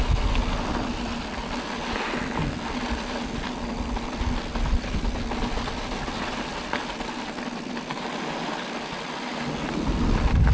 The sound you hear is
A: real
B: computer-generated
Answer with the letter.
A